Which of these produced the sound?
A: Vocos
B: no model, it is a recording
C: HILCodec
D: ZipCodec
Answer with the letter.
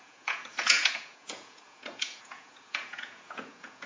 A